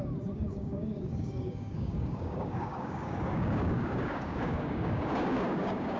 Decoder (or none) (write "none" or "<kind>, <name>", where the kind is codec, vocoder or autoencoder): codec, DAC